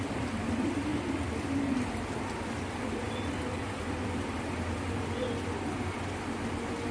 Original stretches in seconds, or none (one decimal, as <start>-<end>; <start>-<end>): 0.0-6.9